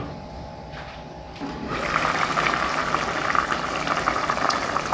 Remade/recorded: remade